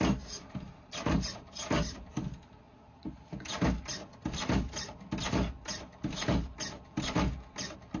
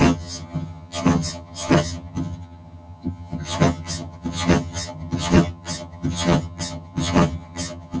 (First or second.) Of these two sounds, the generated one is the second